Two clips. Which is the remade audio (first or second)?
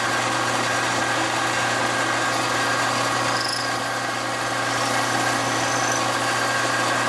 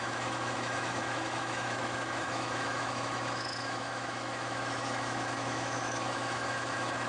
second